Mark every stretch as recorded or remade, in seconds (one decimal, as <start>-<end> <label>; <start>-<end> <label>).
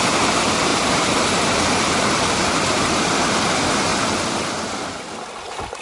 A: 0.0-0.7 recorded; 0.7-3.0 remade; 3.0-3.9 recorded; 3.9-4.5 remade; 4.5-5.8 recorded